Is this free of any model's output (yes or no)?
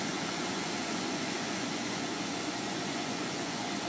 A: no